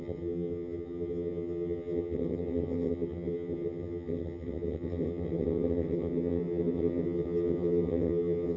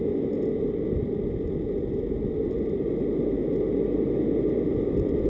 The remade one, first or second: first